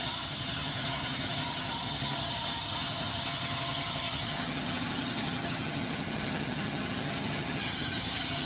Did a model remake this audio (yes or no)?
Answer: yes